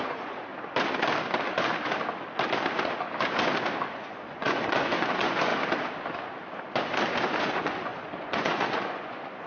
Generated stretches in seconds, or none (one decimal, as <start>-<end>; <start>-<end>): 0.0-0.5; 3.9-5.5; 7.4-9.5